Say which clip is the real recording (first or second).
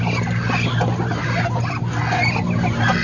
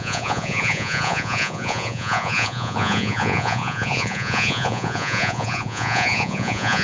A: first